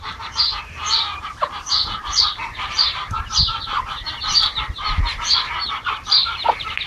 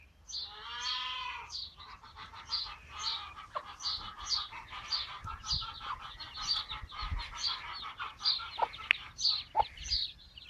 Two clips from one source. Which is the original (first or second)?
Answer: second